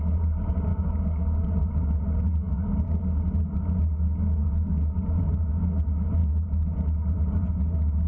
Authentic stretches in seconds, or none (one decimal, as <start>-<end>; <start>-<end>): 0.0-0.7; 1.7-2.3; 3.0-8.1